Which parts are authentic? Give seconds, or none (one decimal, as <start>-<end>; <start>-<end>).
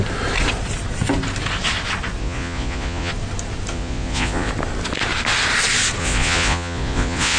0.0-2.2; 3.1-3.7; 4.5-6.0